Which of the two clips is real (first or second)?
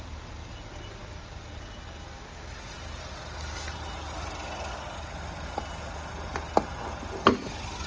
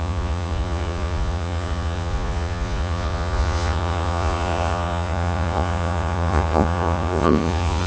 first